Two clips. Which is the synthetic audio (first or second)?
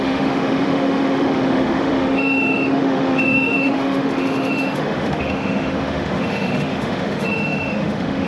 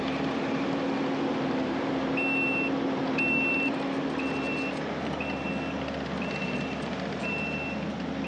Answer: first